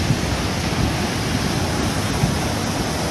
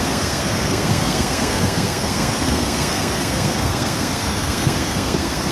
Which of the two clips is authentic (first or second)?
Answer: first